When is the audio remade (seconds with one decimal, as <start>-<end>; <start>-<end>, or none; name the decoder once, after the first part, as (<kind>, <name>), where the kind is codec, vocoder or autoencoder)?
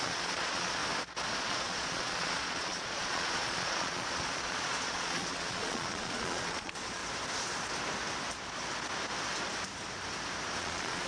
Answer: 0.0-0.8 (vocoder, Vocos); 1.4-7.0; 10.6-11.1